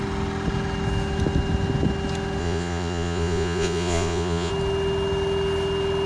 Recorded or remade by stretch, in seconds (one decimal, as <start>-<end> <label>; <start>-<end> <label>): 0.0-2.4 recorded; 2.4-4.5 remade; 4.5-6.1 recorded